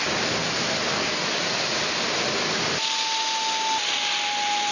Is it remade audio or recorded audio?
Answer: recorded